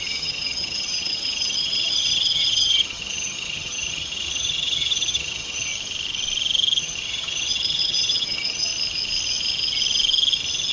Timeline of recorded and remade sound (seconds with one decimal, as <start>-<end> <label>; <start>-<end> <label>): 0.0-5.7 remade; 5.7-6.8 recorded; 6.8-8.7 remade; 8.7-10.7 recorded